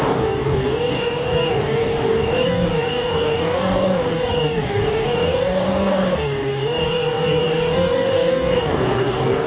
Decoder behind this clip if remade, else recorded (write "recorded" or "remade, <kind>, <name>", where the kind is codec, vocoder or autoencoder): remade, codec, DAC